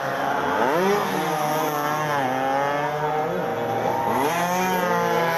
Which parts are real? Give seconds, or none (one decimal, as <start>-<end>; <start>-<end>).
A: 0.0-5.4